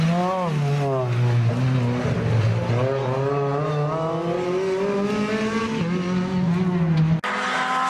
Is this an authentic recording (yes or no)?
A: yes